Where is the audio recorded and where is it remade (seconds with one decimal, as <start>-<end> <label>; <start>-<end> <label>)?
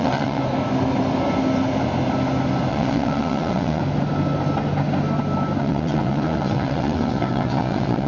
0.0-0.4 remade; 0.4-2.7 recorded; 2.7-3.8 remade; 3.8-5.6 recorded; 5.6-8.1 remade